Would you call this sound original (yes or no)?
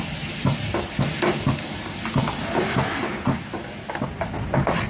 yes